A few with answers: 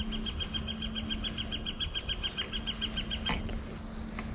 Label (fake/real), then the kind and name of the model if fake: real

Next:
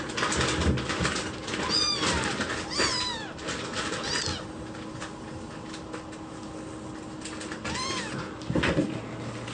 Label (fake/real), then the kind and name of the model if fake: real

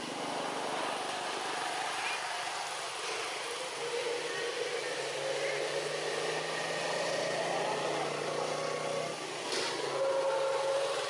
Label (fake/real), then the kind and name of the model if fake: real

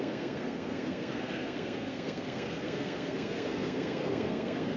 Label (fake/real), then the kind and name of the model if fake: fake, codec, SNAC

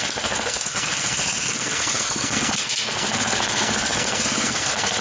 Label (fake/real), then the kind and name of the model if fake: fake, codec, SNAC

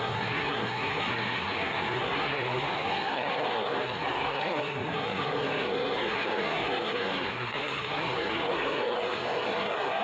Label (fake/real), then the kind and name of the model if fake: fake, codec, SNAC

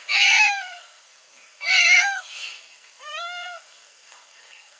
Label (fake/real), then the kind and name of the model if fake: fake, codec, SNAC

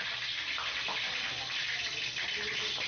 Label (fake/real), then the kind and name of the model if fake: real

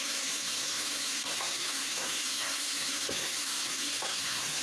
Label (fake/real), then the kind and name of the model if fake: fake, codec, SNAC